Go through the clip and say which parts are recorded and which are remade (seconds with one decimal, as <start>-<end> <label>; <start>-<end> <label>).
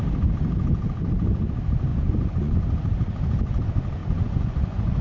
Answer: 0.0-1.9 recorded; 1.9-2.6 remade; 2.6-4.0 recorded; 4.0-5.0 remade